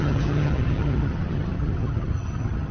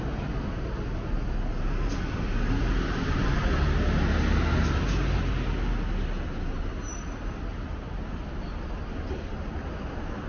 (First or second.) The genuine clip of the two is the second